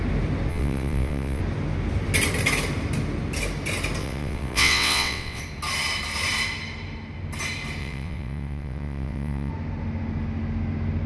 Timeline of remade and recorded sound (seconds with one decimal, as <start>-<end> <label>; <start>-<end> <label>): 0.0-0.5 recorded; 0.5-1.4 remade; 1.4-4.0 recorded; 4.0-5.4 remade; 5.4-7.8 recorded; 7.8-9.5 remade; 9.5-11.1 recorded